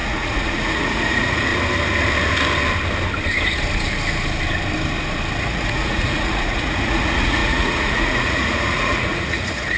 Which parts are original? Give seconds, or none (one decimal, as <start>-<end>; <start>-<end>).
1.5-5.4